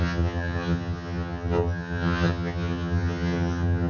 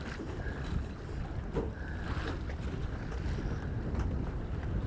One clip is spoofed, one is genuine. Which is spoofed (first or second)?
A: first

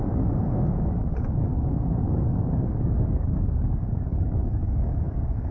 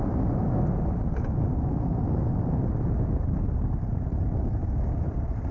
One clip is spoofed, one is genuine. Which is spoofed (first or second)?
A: first